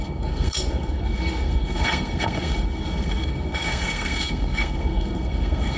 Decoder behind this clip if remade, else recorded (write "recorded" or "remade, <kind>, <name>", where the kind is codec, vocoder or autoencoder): remade, codec, SNAC